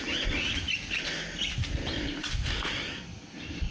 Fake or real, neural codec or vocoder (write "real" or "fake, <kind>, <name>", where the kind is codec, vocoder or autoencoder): real